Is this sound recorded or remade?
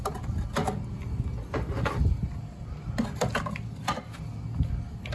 recorded